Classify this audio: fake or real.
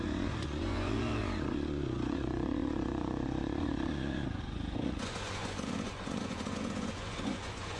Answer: fake